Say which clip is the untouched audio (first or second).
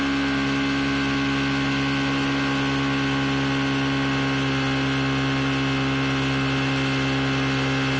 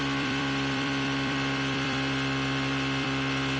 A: first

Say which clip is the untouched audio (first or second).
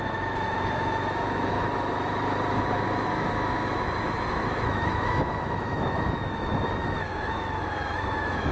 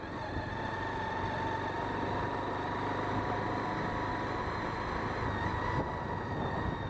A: second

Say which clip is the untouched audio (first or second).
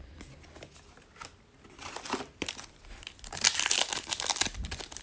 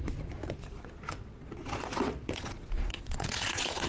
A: first